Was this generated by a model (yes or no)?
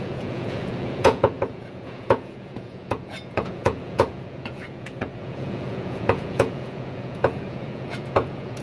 yes